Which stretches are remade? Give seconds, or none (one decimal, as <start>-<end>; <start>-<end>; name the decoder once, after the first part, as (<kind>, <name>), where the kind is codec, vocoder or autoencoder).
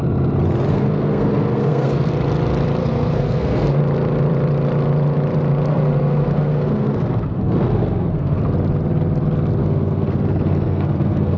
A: 0.7-2.1 (codec, SNAC); 2.8-3.8; 5.7-8.4; 9.6-11.4